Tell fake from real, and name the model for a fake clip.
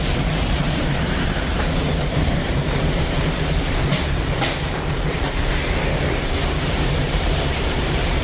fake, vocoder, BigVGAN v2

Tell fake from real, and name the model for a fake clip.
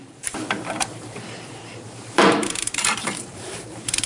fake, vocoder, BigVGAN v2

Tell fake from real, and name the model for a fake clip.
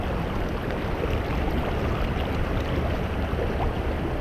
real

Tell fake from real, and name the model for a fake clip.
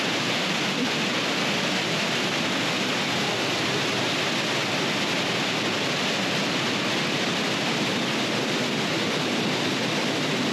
real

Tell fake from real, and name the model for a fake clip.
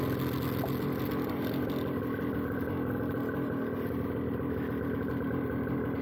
real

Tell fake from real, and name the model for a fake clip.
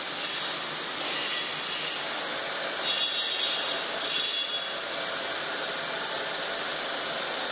real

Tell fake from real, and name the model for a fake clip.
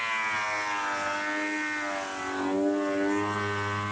real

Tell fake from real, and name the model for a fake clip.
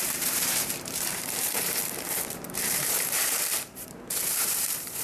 fake, vocoder, BigVGAN v2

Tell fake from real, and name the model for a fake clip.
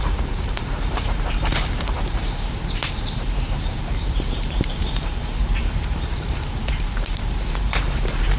fake, vocoder, BigVGAN v2